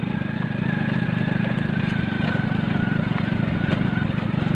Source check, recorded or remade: recorded